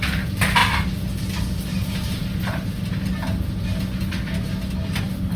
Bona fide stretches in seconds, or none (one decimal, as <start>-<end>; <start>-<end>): 0.0-5.4